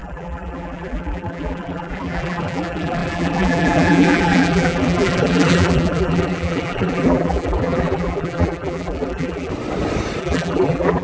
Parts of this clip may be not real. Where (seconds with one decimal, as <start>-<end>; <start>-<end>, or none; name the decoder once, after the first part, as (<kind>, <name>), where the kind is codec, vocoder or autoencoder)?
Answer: 0.0-9.5 (vocoder, BigVGAN v2); 10.2-11.0